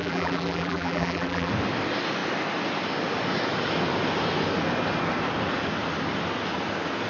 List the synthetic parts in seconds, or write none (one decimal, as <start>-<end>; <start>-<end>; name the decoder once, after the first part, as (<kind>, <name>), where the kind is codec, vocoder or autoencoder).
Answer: 0.0-1.5 (vocoder, BigVGAN v2)